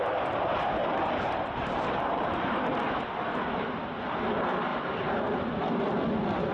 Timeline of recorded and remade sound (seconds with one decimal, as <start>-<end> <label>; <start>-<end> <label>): 0.0-0.8 recorded; 0.8-2.4 remade; 2.4-4.7 recorded; 4.7-5.3 remade; 5.3-6.5 recorded